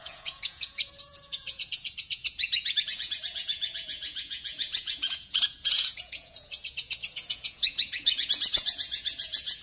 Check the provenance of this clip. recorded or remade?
remade